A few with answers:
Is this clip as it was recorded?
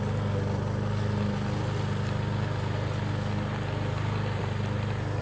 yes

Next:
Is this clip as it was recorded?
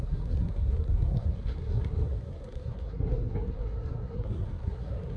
no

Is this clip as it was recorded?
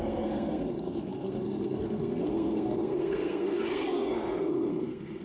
no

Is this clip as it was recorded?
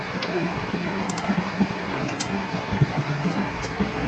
no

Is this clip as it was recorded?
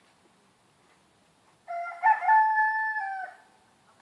yes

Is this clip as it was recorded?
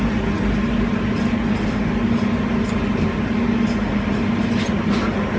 yes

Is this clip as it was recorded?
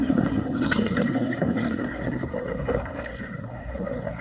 no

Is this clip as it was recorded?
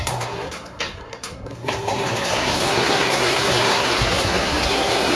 no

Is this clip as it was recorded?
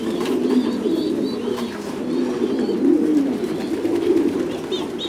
yes